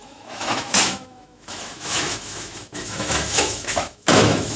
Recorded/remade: remade